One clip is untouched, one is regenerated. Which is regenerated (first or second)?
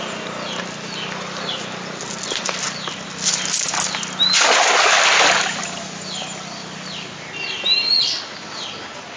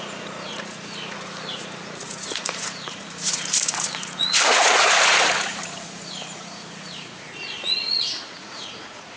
second